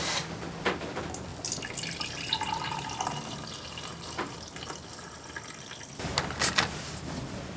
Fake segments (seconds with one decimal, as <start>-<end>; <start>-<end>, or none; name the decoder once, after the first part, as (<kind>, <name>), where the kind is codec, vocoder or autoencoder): none

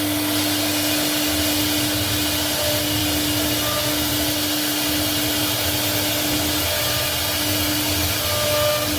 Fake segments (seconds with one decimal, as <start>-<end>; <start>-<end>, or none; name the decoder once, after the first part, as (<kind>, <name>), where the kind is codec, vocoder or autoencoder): none

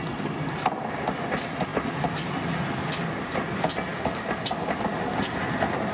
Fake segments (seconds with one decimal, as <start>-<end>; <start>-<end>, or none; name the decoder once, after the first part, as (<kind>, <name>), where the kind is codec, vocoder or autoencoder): none

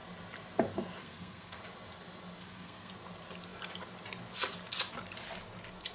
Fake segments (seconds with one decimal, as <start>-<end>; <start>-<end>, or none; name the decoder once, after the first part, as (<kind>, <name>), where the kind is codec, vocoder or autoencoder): 1.0-1.6 (codec, SNAC); 2.4-2.9

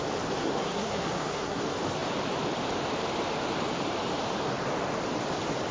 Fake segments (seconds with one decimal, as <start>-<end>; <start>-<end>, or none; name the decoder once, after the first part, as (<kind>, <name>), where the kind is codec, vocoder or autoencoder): 0.4-1.6 (codec, SNAC)

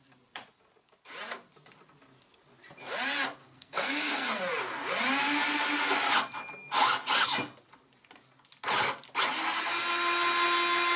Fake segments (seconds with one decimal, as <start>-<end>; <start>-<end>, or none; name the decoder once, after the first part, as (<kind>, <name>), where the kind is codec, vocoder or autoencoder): 3.4-4.4 (codec, SNAC)